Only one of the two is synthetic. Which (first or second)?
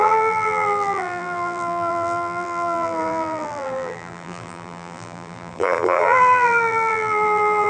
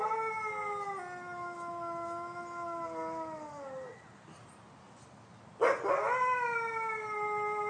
first